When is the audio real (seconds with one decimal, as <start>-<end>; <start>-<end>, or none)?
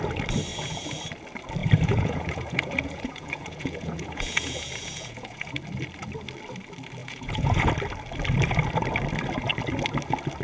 0.0-0.5; 1.0-1.6; 5.5-7.0; 7.7-10.4